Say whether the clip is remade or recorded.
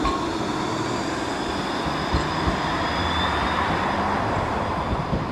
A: recorded